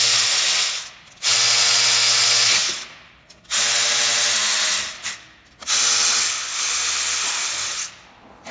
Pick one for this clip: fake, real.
real